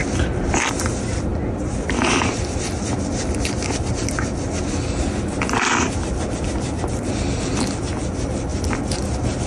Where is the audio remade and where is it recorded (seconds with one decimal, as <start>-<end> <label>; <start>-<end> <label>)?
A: 0.0-0.6 remade; 0.6-9.5 recorded